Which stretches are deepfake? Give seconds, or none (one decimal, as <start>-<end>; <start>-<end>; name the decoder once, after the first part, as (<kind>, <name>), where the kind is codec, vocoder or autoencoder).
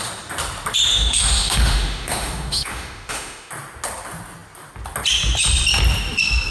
0.9-3.5 (autoencoder, DAC-VAE)